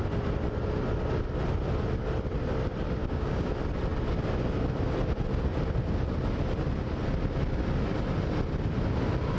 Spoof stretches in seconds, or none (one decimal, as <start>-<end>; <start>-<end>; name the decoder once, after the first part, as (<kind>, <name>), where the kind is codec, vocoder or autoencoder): 3.0-3.5 (codec, DAC)